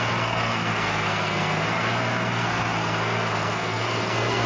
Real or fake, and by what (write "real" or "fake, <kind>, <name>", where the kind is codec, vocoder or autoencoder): fake, codec, SNAC